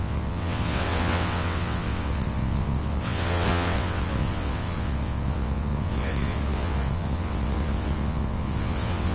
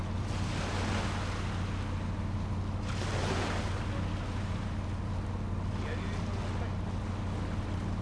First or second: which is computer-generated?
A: first